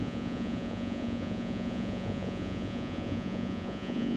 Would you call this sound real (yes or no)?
no